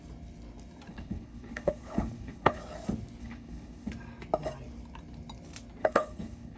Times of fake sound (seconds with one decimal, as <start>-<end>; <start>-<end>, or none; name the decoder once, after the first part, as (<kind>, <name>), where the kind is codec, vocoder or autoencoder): 0.9-2.6 (codec, HILCodec); 3.2-3.9; 5.8-6.6